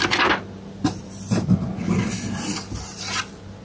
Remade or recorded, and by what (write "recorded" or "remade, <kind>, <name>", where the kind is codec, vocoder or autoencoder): recorded